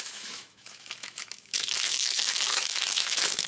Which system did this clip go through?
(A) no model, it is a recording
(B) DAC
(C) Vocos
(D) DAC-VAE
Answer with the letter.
D